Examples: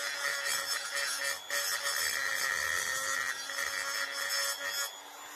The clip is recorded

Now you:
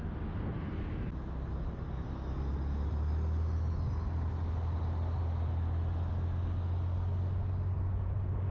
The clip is recorded